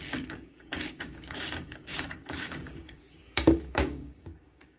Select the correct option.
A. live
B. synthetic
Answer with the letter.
B